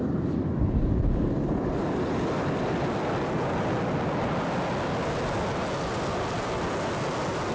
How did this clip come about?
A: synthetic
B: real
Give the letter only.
B